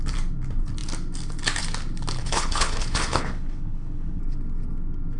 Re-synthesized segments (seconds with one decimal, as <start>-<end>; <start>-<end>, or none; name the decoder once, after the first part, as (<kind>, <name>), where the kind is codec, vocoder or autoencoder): 2.2-4.2 (codec, HILCodec)